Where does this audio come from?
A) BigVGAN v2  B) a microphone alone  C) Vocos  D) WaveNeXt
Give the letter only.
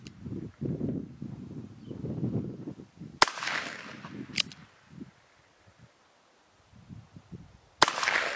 B